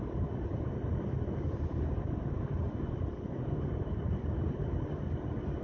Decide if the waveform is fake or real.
real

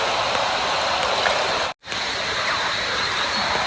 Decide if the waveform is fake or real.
real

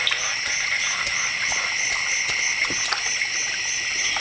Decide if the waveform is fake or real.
real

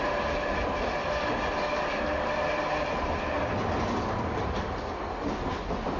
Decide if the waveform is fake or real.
real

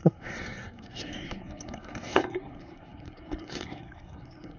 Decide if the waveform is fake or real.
fake